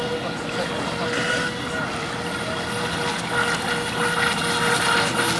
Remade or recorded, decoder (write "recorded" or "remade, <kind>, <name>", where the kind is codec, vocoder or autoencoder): recorded